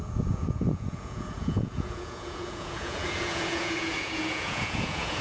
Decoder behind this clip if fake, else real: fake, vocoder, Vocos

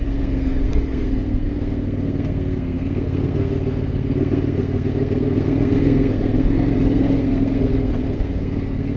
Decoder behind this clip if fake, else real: fake, codec, SNAC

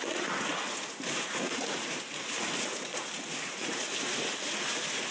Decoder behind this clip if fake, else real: fake, vocoder, Vocos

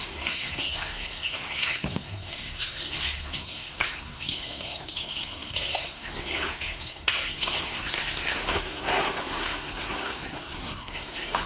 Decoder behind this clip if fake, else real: fake, codec, SNAC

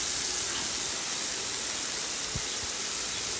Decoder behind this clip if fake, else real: real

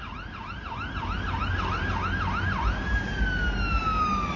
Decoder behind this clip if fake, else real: real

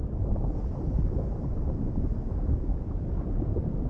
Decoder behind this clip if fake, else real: real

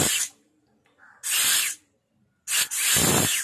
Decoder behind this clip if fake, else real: real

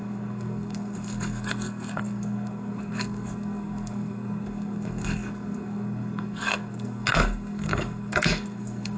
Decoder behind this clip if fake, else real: fake, codec, SNAC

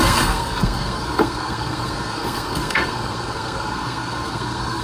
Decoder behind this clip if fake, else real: fake, codec, SNAC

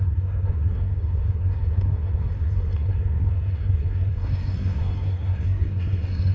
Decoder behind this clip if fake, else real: fake, codec, SNAC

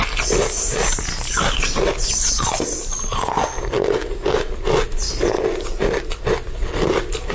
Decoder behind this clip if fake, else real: real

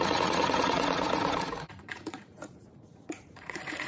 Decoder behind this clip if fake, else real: fake, vocoder, Vocos